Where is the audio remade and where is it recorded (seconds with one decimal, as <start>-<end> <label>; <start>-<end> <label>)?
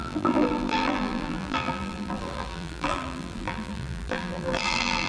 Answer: 0.0-5.1 remade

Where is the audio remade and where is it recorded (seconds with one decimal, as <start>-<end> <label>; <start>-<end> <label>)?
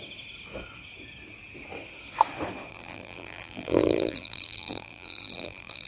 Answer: 0.0-2.7 recorded; 2.7-5.9 remade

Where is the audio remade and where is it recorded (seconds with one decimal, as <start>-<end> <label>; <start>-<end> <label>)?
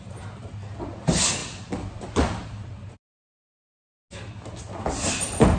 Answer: 0.0-5.6 recorded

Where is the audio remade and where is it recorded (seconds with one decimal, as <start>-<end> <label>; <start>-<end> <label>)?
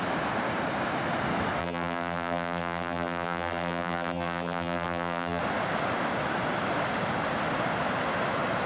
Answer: 0.0-1.6 recorded; 1.6-5.4 remade; 5.4-8.7 recorded